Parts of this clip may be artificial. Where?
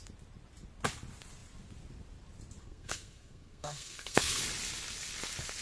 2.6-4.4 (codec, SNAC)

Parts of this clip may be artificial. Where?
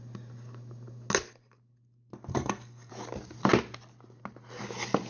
2.3-2.9 (codec, SNAC)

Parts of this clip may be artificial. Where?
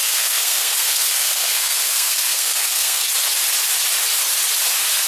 0.0-3.1 (codec, SNAC)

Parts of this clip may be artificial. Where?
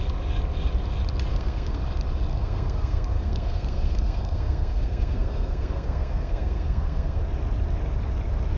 1.3-1.8 (codec, SNAC); 2.3-7.2